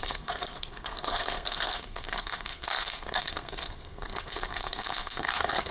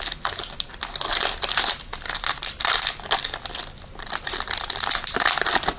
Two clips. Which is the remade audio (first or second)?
first